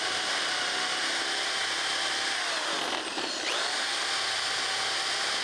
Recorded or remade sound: recorded